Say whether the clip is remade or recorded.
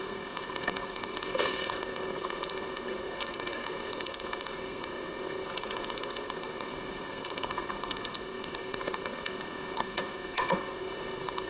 remade